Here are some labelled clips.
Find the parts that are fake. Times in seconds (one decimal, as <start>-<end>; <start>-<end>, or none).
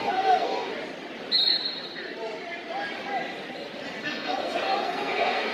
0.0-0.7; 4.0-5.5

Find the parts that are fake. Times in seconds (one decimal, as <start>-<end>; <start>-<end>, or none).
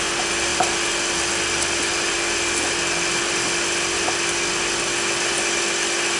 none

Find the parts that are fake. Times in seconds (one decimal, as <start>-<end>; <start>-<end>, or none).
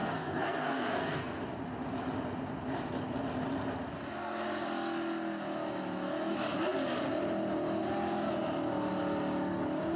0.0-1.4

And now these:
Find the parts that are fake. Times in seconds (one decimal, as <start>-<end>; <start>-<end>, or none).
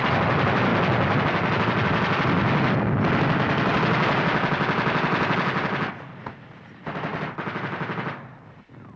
none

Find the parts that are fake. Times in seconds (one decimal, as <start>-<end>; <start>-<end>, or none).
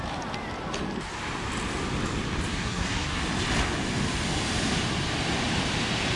2.5-3.2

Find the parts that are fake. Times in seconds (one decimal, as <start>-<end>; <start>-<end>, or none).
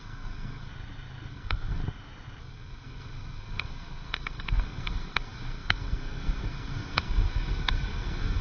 0.0-0.7; 1.3-1.8; 2.4-8.4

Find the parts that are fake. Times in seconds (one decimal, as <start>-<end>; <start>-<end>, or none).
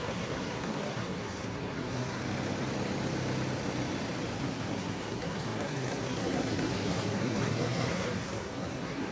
0.0-2.2; 4.4-9.1